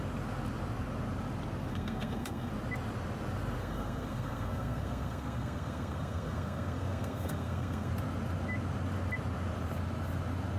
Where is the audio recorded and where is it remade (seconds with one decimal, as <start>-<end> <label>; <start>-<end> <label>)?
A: 0.0-1.7 recorded; 1.7-2.5 remade; 2.5-3.6 recorded; 3.6-7.9 remade; 7.9-10.6 recorded